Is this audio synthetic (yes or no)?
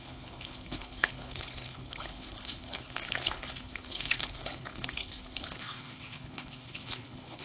yes